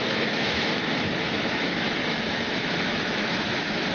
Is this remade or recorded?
remade